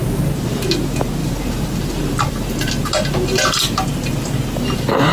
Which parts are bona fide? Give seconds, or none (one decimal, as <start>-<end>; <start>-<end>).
0.0-1.2; 2.7-5.1